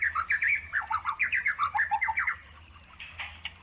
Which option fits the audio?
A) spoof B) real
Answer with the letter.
B